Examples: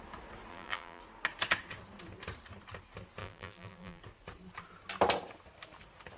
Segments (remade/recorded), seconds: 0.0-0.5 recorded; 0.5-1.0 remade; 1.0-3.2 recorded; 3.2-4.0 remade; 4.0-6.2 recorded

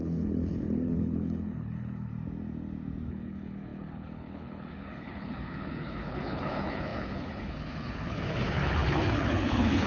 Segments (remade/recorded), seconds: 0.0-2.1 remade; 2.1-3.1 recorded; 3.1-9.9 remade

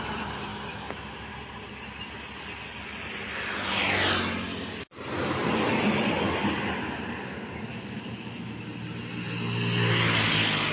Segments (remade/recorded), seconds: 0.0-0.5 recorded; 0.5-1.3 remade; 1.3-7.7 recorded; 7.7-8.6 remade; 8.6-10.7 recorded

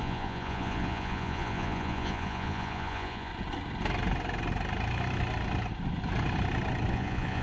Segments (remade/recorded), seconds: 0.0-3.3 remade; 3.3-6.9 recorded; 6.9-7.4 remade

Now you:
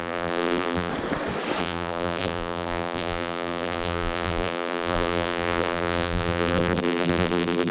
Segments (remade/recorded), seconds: 0.0-0.9 remade; 0.9-1.6 recorded; 1.6-7.7 remade